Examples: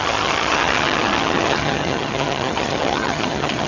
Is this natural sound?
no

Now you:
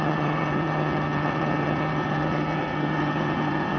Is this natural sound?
no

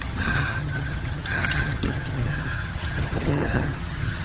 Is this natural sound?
no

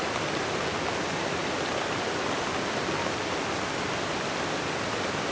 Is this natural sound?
yes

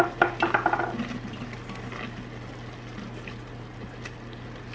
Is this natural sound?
yes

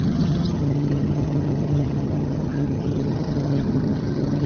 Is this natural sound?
no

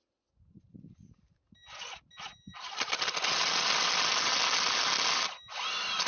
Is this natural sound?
yes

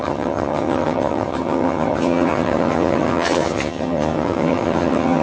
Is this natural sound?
no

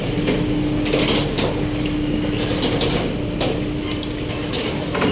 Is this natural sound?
yes